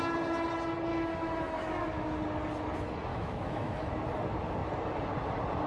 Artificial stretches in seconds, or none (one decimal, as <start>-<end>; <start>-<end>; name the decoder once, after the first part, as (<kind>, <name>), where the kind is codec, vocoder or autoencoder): 0.9-2.1 (autoencoder, DAC-VAE); 3.1-3.9